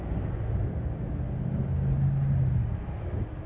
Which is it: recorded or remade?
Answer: recorded